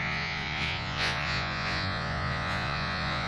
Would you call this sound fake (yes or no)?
yes